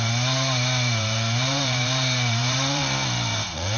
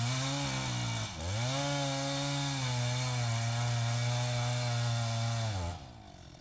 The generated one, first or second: first